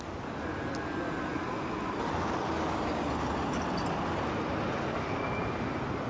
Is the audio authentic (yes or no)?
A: yes